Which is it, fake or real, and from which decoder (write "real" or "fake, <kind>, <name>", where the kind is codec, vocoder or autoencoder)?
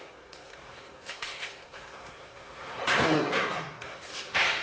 fake, codec, SNAC